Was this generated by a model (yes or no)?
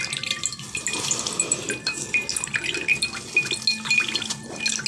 no